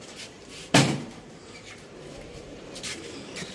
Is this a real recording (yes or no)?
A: no